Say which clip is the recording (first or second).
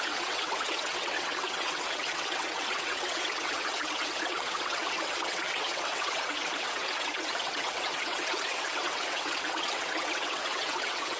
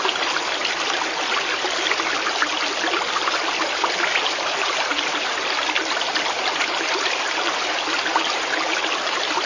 second